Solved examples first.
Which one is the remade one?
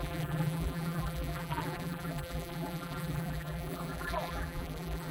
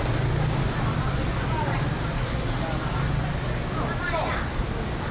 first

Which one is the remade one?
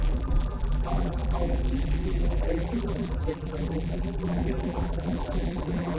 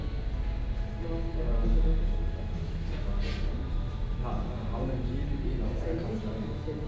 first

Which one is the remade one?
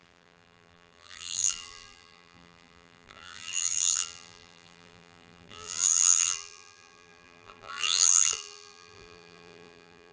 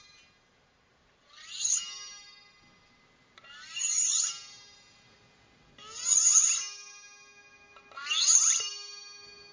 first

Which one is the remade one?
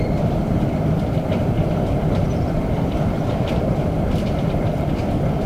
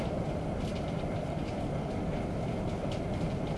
first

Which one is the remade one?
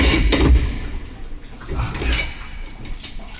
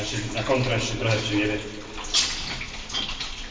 first